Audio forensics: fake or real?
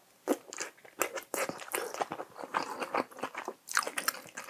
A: real